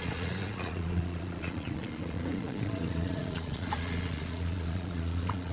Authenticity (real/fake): fake